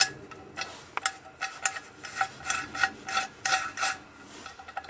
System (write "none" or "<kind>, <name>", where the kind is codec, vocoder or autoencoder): none